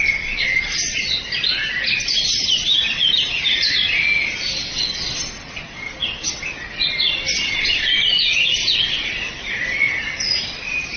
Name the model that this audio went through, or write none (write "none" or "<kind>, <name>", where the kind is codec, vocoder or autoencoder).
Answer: none